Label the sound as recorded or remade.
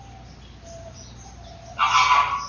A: recorded